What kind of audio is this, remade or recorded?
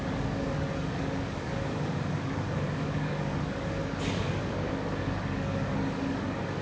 remade